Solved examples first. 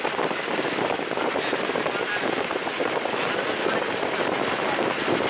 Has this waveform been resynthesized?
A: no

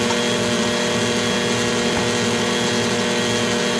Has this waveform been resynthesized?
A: no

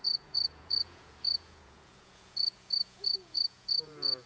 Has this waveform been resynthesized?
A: yes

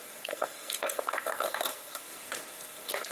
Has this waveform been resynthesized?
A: yes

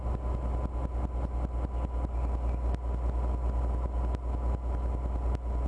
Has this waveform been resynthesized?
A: no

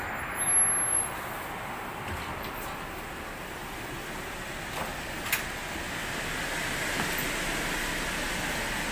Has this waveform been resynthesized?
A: no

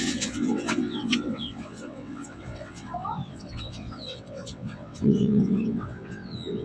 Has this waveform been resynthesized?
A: yes